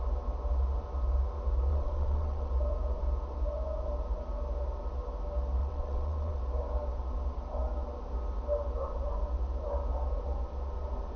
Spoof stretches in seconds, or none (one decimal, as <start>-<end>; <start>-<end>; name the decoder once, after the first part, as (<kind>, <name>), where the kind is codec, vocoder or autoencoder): 1.7-2.5 (vocoder, WaveNeXt); 5.6-6.4